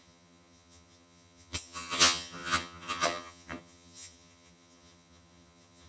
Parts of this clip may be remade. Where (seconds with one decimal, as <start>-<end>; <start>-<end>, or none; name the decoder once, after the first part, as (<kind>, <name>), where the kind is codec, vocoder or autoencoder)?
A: 0.0-5.9 (vocoder, HiFi-GAN)